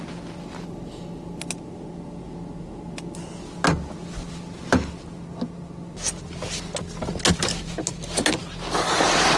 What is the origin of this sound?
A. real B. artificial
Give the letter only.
A